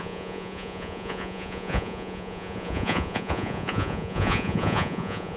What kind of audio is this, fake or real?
fake